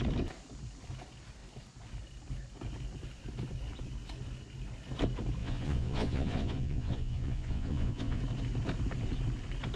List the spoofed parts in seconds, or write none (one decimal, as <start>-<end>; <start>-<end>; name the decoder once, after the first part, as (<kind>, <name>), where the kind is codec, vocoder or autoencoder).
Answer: 5.4-8.2 (vocoder, Vocos)